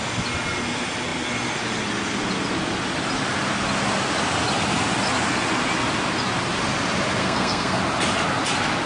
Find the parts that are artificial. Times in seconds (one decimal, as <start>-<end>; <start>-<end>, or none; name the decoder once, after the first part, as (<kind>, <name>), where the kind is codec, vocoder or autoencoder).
7.2-7.8 (codec, SNAC)